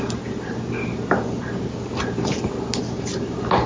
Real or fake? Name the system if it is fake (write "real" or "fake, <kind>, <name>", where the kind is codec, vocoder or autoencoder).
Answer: real